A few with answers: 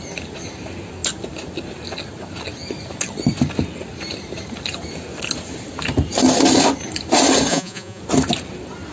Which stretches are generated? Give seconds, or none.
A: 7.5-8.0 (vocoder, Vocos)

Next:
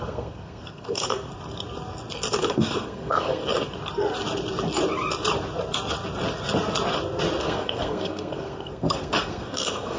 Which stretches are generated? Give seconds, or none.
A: 0.0-1.3 (codec, SNAC); 2.4-3.4; 7.4-10.0